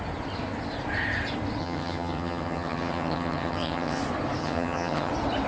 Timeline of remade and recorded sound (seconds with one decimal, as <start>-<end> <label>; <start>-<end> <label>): 0.0-1.6 recorded; 1.6-4.0 remade; 4.0-4.4 recorded; 4.4-5.1 remade; 5.1-5.5 recorded